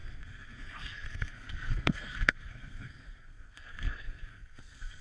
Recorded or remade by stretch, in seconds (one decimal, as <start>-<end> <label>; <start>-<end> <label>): 0.0-5.0 remade